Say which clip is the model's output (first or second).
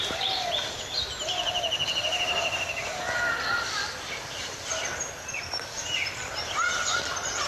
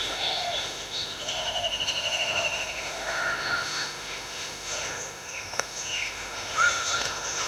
second